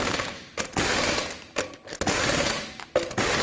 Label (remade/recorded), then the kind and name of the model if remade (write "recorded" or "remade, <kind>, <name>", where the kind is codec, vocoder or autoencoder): recorded